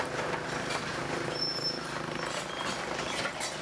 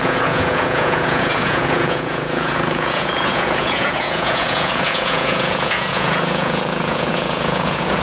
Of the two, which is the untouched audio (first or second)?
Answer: first